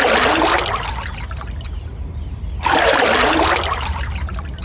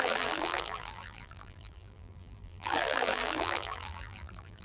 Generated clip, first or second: second